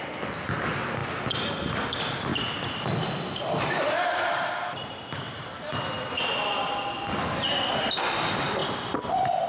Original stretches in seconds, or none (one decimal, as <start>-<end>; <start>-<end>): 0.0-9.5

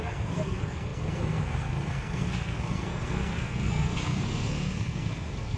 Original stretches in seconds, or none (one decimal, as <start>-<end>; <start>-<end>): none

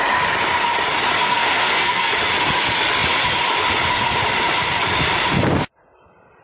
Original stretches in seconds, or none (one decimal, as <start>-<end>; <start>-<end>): 0.0-1.2; 2.1-6.4